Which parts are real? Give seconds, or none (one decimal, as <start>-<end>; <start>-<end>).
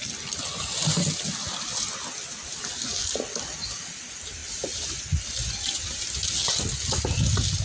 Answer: 0.0-4.4; 5.2-7.6